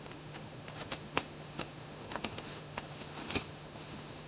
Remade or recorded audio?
remade